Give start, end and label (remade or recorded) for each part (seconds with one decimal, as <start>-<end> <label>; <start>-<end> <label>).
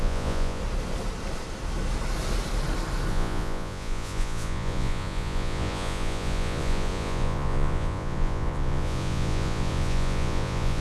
0.0-0.6 remade; 0.6-3.1 recorded; 3.1-10.8 remade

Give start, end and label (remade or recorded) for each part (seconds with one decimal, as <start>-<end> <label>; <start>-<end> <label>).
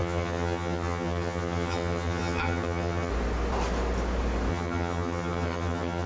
0.0-3.1 remade; 3.1-4.5 recorded; 4.5-6.1 remade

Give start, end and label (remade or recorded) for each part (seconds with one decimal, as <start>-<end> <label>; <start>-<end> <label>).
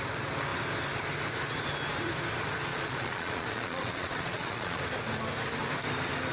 0.0-2.7 recorded; 2.7-4.8 remade; 4.8-6.3 recorded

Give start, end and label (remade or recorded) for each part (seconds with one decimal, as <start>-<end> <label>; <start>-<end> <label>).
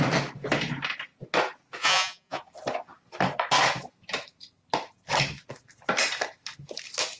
0.0-1.8 recorded; 1.8-2.4 remade; 2.4-7.2 recorded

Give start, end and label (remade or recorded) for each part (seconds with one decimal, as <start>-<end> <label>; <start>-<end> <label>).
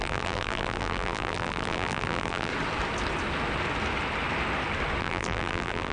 0.0-2.5 remade; 2.5-5.0 recorded; 5.0-5.9 remade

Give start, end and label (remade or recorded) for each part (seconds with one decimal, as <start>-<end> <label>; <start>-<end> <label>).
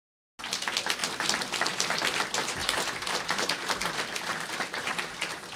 0.0-2.6 recorded; 2.6-3.9 remade; 3.9-4.3 recorded; 4.3-4.9 remade; 4.9-5.6 recorded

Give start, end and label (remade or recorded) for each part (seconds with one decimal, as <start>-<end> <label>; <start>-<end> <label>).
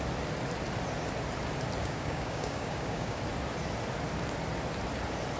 0.0-1.8 recorded; 1.8-3.2 remade; 3.2-5.4 recorded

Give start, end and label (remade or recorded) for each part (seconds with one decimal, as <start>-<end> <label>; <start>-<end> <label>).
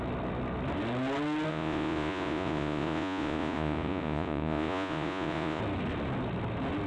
0.0-1.5 recorded; 1.5-5.6 remade; 5.6-6.9 recorded